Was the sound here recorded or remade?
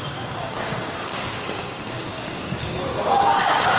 remade